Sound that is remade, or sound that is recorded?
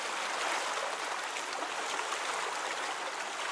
recorded